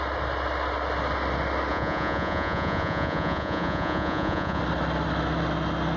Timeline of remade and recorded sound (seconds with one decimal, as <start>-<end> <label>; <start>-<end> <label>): 0.0-1.7 recorded; 1.7-4.6 remade; 4.6-6.0 recorded